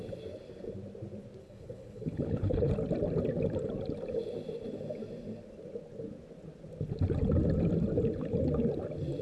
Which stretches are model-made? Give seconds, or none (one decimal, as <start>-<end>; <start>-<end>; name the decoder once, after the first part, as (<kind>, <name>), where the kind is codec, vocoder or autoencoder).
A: 1.4-2.7 (codec, HILCodec)